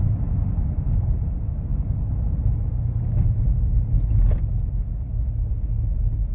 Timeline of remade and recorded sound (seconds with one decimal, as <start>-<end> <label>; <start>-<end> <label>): 0.0-6.3 recorded